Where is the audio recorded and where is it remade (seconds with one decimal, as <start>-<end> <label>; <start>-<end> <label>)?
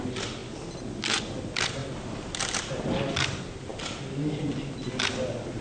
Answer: 0.0-5.6 recorded